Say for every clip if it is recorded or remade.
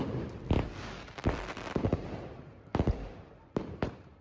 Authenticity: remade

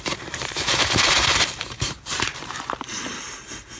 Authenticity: remade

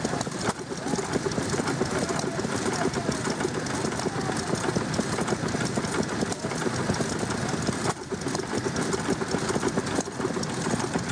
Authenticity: remade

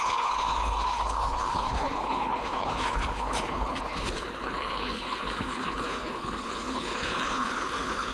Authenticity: remade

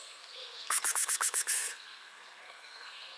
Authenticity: remade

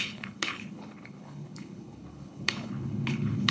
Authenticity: remade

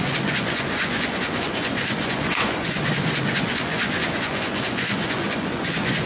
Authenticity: remade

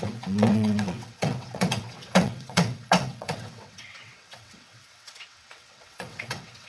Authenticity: remade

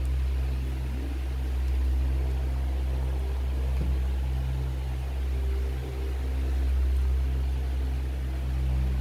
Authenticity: recorded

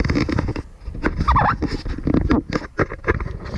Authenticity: recorded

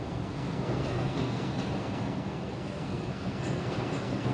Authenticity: remade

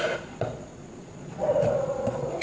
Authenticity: remade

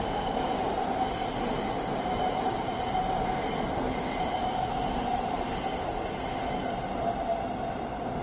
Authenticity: recorded